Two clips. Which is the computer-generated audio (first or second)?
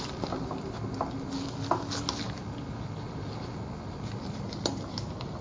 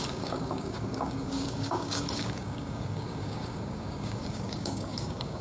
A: second